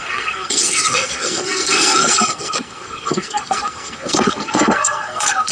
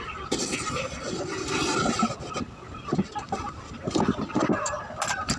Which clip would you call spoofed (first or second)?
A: first